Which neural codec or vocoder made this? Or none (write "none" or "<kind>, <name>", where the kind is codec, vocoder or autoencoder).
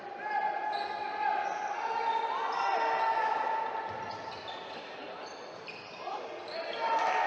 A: none